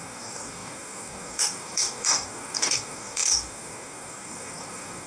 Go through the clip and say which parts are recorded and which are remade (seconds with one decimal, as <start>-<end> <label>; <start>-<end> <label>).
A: 0.0-5.1 remade